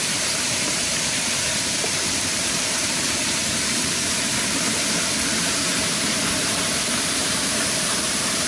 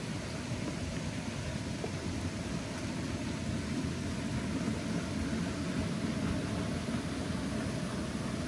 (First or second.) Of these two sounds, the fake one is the first